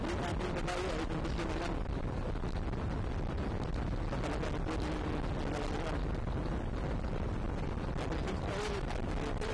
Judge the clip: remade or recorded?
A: recorded